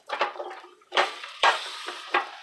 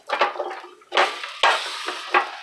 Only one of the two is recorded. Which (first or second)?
second